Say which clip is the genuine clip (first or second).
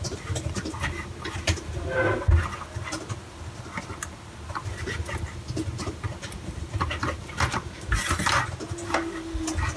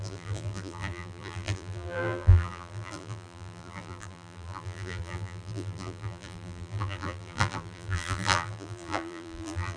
first